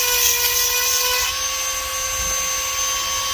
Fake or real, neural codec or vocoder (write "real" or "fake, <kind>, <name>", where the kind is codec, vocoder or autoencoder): real